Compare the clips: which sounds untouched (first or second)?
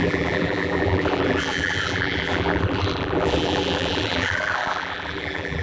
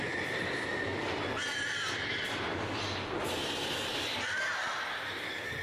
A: second